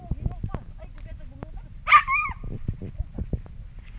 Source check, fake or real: real